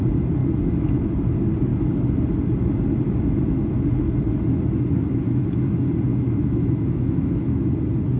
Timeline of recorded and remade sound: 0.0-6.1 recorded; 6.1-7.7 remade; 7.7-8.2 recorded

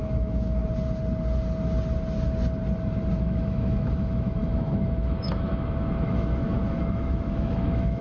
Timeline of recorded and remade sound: 0.0-0.6 remade; 0.6-3.2 recorded; 3.2-8.0 remade

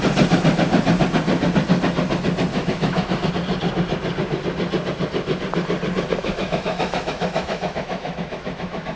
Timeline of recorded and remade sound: 0.0-2.5 recorded; 2.5-3.3 remade; 3.3-6.2 recorded; 6.2-9.0 remade

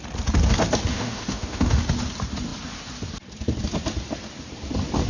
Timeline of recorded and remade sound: 0.0-0.9 recorded; 0.9-1.8 remade; 1.8-5.1 recorded

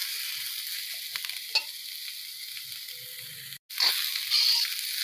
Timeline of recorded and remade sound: 0.0-5.0 recorded

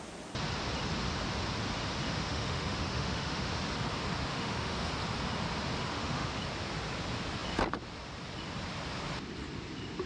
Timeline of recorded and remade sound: 0.0-2.1 recorded; 2.1-3.5 remade; 3.5-4.3 recorded; 4.3-4.9 remade; 4.9-5.9 recorded; 5.9-6.4 remade; 6.4-10.1 recorded

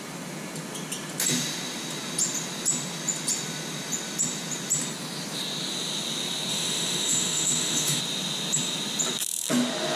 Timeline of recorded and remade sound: 0.0-6.5 recorded; 6.5-8.0 remade; 8.0-10.0 recorded

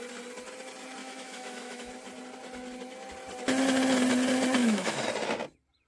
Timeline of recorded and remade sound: 0.0-1.0 recorded; 1.0-1.9 remade; 1.9-4.6 recorded; 4.6-5.1 remade; 5.1-5.9 recorded